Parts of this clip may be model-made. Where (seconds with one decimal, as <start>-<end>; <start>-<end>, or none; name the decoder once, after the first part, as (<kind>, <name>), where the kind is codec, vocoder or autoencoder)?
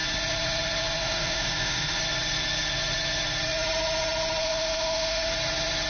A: 1.0-2.0 (autoencoder, DAC-VAE); 4.4-5.3